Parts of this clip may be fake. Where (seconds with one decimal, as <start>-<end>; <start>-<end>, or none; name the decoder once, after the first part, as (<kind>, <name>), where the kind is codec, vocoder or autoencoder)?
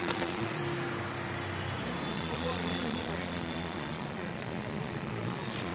0.0-0.6 (vocoder, Vocos); 2.1-5.7